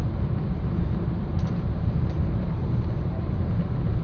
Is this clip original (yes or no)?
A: no